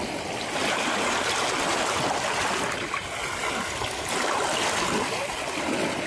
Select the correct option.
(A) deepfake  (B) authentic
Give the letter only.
B